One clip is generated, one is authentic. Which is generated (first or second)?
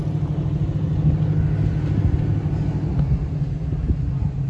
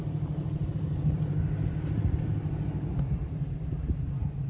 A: second